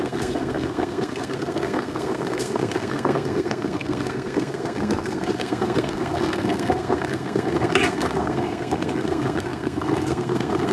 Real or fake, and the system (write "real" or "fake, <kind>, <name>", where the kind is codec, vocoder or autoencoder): fake, codec, SNAC